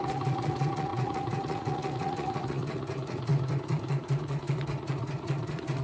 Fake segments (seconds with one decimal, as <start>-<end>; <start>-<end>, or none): 0.0-5.8